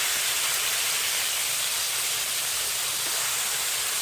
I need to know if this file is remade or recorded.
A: recorded